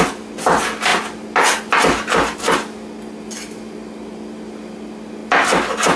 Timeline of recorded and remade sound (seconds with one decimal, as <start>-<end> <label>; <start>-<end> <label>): 0.0-6.0 recorded